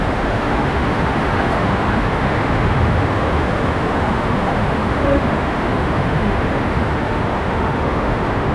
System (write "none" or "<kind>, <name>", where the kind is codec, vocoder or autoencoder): autoencoder, DAC-VAE